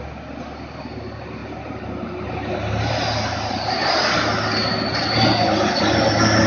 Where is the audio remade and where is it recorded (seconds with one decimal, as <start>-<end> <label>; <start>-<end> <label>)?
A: 0.0-1.4 recorded; 1.4-2.3 remade; 2.3-6.5 recorded